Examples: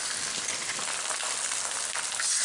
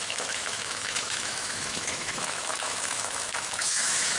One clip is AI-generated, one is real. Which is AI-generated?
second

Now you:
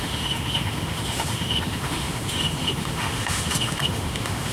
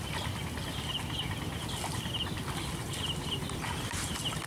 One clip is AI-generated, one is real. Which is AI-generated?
first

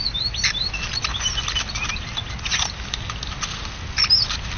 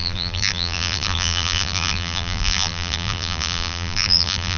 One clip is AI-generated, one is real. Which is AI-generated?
second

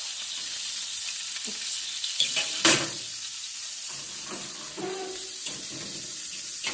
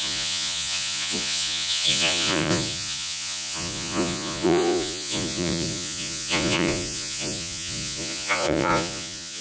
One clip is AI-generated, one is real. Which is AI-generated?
second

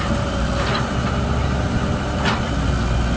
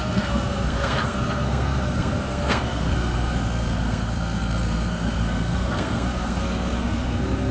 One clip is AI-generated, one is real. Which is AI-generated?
second